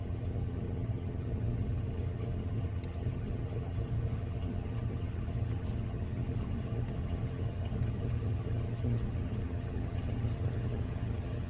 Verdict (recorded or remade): remade